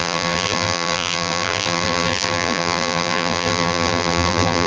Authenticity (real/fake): fake